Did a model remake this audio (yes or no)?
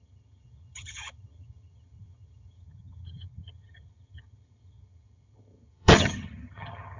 yes